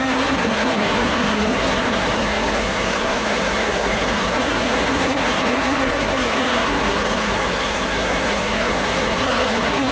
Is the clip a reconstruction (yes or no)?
yes